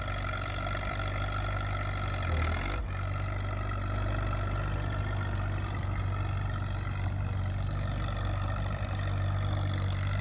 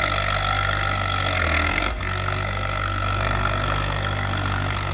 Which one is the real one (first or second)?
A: first